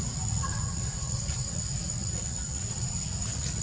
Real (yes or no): no